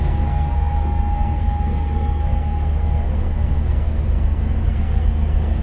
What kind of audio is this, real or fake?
fake